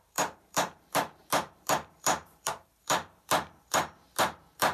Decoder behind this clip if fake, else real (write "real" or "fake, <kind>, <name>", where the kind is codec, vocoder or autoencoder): fake, vocoder, BigVGAN v2